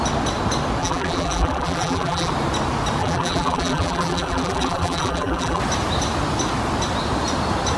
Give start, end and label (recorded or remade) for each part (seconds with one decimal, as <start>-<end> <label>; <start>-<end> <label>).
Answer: 0.0-0.8 recorded; 0.8-2.3 remade; 2.3-3.0 recorded; 3.0-5.6 remade; 5.6-7.8 recorded